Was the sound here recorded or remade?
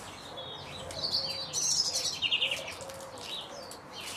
recorded